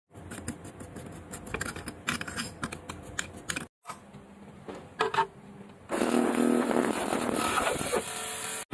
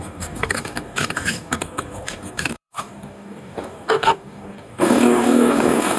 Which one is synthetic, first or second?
second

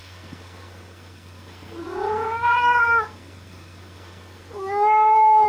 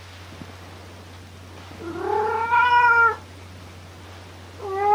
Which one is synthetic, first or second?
first